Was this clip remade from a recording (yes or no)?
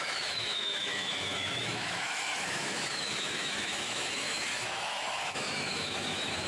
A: yes